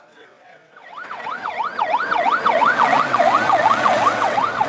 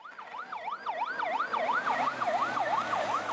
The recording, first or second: second